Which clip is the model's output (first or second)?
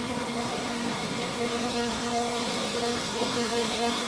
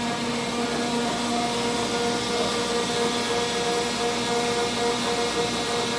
first